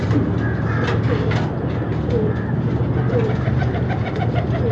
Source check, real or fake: real